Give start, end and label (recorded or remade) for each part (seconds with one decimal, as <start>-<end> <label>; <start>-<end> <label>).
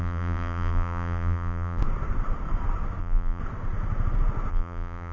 0.0-1.8 remade; 1.8-3.0 recorded; 3.0-3.4 remade; 3.4-4.5 recorded; 4.5-5.1 remade